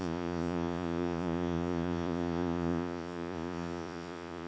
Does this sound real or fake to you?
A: fake